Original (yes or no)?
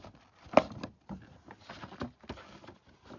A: yes